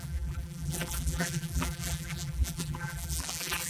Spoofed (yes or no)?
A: yes